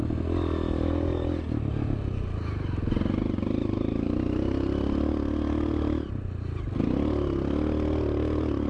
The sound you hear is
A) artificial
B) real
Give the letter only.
B